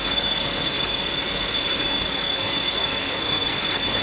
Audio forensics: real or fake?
fake